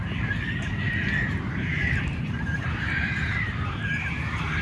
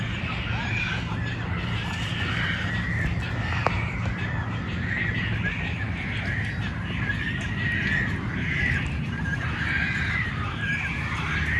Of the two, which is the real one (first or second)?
second